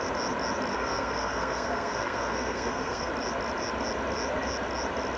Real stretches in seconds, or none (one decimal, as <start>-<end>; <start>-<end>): 0.0-0.7; 3.1-5.2